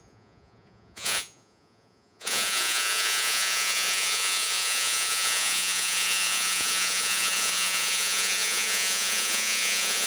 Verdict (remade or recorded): remade